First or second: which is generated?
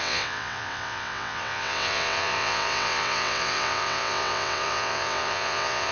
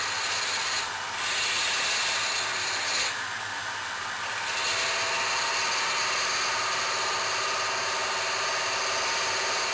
first